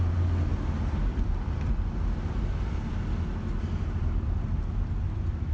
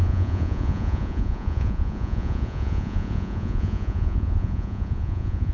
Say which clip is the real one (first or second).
first